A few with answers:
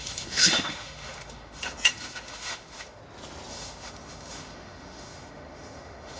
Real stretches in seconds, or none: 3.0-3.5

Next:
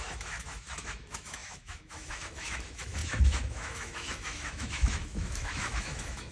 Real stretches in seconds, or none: none

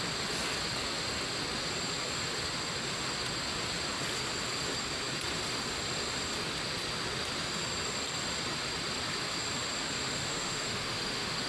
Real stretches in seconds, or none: 0.0-10.2

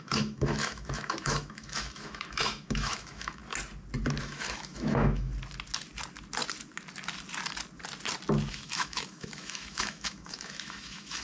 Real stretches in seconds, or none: 3.4-4.2; 5.3-8.5

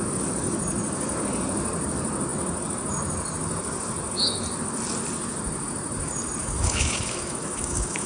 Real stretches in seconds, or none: 0.0-6.4

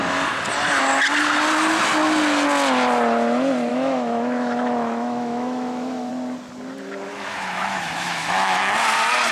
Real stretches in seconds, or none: 0.0-3.7; 6.1-7.1; 8.6-9.3